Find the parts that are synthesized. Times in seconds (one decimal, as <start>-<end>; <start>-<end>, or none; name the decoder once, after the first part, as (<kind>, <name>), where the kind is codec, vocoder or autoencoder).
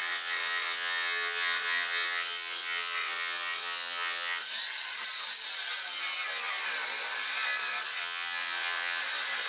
0.0-4.4 (vocoder, WaveNeXt); 8.0-9.0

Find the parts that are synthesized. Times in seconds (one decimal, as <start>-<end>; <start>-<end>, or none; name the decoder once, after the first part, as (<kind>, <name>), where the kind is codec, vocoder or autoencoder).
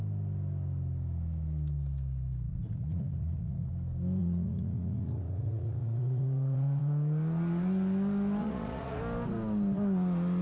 2.5-3.7 (vocoder, Vocos); 4.2-6.8; 8.4-9.0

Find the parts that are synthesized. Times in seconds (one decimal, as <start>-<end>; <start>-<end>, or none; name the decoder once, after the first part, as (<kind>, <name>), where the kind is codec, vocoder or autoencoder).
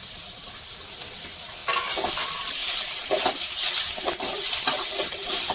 none